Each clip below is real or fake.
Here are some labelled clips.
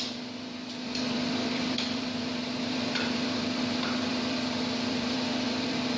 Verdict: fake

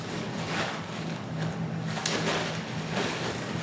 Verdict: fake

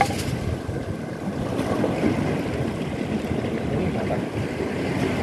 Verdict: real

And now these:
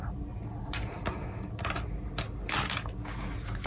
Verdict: real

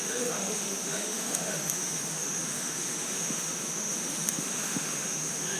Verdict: fake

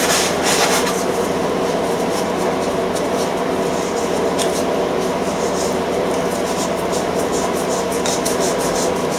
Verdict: real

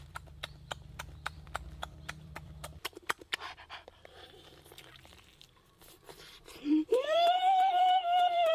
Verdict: fake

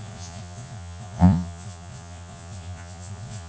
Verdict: fake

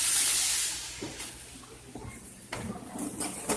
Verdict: real